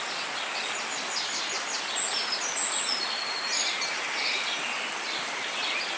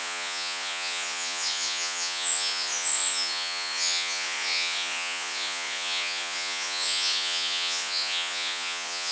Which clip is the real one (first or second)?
first